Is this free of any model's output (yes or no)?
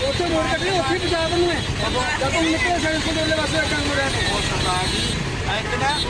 yes